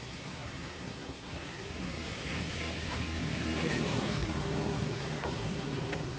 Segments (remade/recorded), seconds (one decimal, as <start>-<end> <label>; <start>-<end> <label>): 0.0-6.2 remade